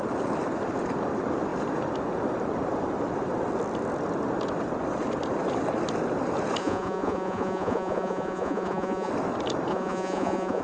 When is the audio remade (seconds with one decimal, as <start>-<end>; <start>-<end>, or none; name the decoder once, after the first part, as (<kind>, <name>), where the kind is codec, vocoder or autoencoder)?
6.6-9.1 (vocoder, Vocos); 9.7-10.6